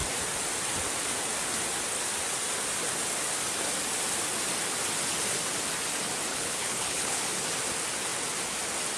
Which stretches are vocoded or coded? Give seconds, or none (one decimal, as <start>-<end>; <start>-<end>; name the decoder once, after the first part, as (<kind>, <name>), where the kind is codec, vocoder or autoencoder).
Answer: 6.3-7.2 (codec, HILCodec)